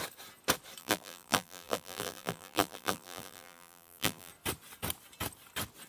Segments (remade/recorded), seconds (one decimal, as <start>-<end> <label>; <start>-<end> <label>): 0.0-0.8 recorded; 0.8-4.3 remade; 4.3-5.9 recorded

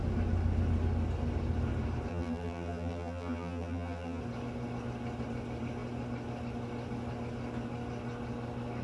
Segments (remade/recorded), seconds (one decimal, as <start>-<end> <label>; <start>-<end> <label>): 0.0-2.1 recorded; 2.1-4.2 remade; 4.2-8.8 recorded

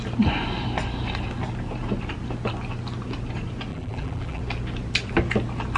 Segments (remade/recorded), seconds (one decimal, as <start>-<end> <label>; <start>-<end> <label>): 0.0-3.7 recorded; 3.7-4.4 remade; 4.4-5.8 recorded